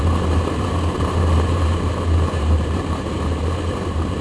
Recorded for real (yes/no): no